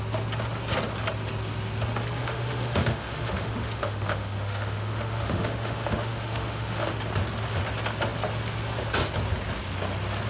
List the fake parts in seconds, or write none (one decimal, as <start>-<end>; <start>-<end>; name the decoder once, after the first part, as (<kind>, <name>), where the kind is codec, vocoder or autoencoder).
2.2-6.9 (autoencoder, DAC-VAE)

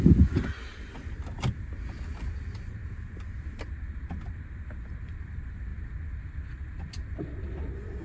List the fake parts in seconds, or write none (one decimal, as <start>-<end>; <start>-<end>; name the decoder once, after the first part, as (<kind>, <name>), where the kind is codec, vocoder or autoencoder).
none